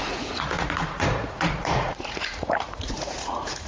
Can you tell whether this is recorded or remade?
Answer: remade